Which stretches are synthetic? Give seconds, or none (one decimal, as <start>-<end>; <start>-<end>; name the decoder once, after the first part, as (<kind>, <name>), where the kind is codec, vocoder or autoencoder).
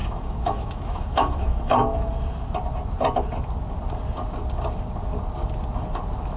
0.0-2.1 (autoencoder, DAC-VAE)